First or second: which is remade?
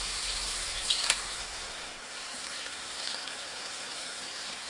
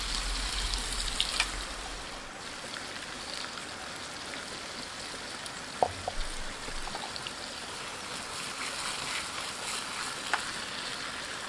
first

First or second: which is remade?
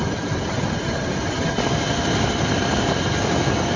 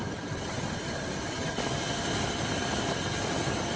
second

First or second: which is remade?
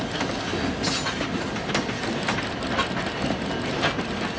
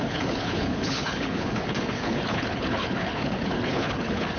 second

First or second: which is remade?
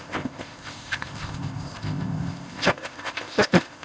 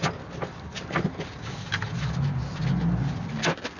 first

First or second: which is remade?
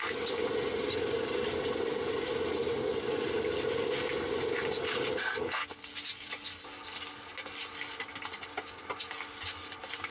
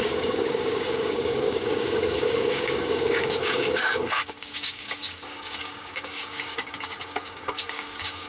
second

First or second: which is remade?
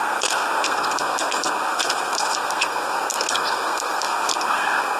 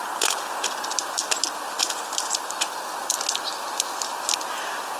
first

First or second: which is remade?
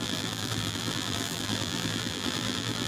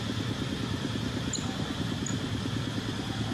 first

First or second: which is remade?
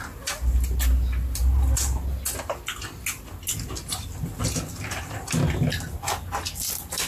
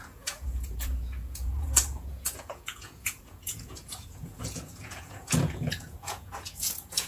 second